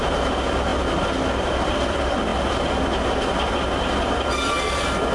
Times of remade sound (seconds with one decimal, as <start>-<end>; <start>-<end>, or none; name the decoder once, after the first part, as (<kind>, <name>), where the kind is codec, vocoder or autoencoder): none